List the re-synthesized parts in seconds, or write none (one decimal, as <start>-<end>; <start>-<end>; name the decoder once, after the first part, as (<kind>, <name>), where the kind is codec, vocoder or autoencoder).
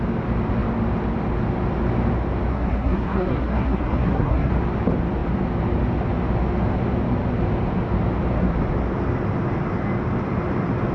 2.5-4.5 (codec, SNAC)